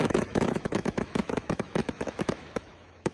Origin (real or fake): fake